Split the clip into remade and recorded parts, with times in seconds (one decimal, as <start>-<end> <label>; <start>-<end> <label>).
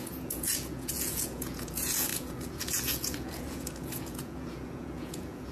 0.0-5.5 remade